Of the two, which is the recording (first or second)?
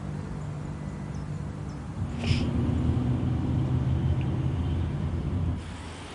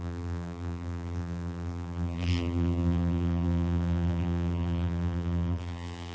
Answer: first